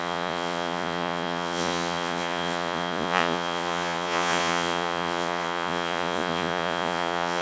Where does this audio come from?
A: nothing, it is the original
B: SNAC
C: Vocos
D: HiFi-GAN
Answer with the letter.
C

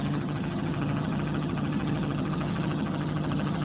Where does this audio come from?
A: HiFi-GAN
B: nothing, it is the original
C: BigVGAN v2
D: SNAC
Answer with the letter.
A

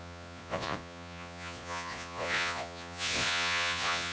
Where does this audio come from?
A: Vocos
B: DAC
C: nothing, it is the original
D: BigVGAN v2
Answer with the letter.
A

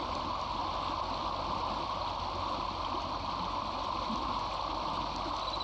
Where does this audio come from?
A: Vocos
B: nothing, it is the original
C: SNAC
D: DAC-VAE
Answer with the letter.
B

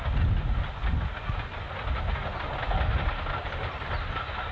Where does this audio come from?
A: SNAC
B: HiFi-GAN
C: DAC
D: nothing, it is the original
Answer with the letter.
D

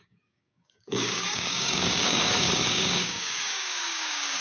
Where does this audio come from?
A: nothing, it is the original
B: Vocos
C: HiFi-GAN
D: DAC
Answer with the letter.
D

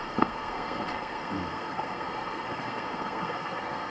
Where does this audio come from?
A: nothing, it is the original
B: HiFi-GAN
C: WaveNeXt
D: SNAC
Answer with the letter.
D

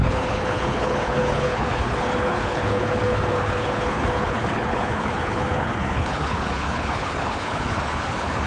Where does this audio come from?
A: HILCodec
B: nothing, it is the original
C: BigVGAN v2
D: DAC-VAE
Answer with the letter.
A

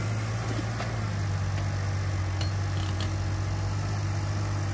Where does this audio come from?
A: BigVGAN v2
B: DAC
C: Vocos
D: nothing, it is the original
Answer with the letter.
D